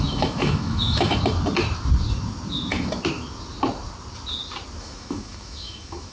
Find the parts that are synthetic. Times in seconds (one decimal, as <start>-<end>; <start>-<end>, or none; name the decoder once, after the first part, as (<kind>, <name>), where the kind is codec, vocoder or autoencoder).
0.0-1.1 (autoencoder, DAC-VAE); 4.8-6.1

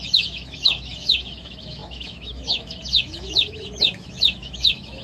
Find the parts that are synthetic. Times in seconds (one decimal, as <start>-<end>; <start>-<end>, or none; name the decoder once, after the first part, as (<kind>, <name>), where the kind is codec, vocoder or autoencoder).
0.0-5.0 (autoencoder, DAC-VAE)